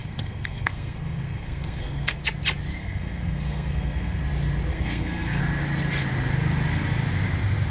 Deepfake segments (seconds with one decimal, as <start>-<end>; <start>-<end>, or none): 0.0-2.2; 2.8-4.2; 4.7-5.4